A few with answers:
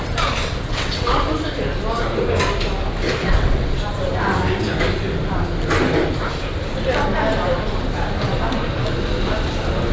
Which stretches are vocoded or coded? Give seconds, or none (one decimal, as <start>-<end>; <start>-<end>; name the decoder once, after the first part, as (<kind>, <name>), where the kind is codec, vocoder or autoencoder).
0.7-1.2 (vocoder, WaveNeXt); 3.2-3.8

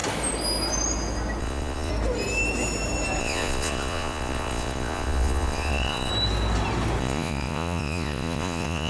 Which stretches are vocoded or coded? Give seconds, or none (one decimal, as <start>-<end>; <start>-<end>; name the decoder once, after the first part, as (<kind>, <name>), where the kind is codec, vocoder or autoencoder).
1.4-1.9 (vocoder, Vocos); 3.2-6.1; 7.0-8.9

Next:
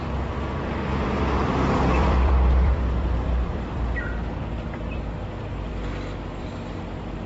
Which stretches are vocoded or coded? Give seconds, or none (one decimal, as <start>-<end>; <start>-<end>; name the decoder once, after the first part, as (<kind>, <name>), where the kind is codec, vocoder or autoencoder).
0.0-5.7 (vocoder, BigVGAN v2); 6.4-7.3

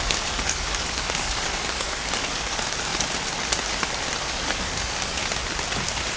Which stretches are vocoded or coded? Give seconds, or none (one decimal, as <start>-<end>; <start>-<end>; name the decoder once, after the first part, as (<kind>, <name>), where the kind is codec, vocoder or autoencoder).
0.0-2.9 (codec, DAC); 4.2-5.2

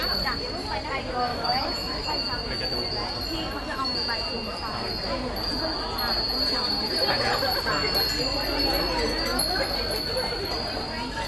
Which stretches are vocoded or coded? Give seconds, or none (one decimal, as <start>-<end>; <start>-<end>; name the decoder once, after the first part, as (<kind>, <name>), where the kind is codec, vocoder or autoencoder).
1.3-2.1 (autoencoder, DAC-VAE)